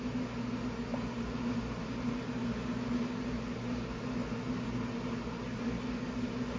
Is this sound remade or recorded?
recorded